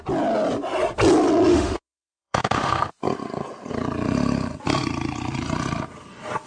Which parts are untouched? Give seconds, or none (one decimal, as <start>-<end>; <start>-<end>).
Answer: 0.0-1.5; 2.9-6.5